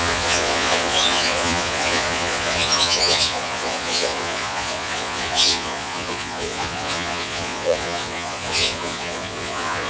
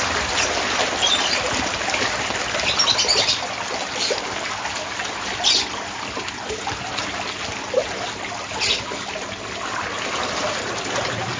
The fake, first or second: first